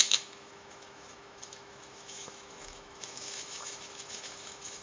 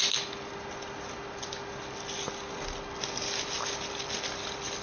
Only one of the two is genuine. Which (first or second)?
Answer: second